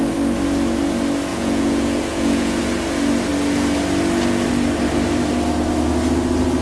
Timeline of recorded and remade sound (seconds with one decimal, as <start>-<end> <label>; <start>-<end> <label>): 0.0-1.3 recorded; 1.3-2.6 remade; 2.6-6.6 recorded